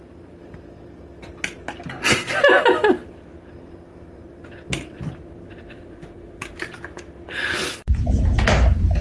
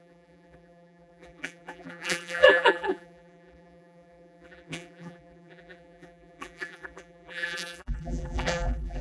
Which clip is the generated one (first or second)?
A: second